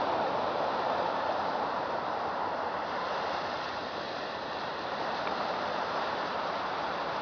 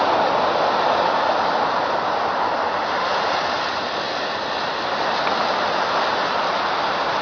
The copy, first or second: first